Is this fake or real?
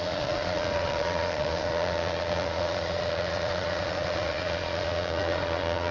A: fake